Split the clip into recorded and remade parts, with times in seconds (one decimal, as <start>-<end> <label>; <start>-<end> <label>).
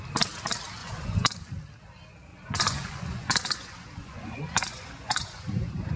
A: 0.0-0.8 recorded; 0.8-1.5 remade; 1.5-2.3 recorded; 2.3-6.0 remade